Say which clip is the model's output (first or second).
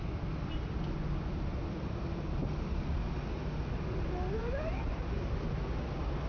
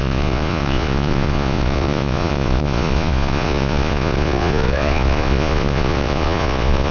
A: second